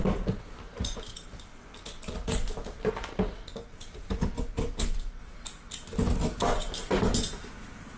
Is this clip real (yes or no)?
yes